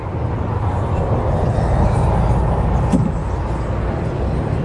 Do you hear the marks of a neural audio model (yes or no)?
no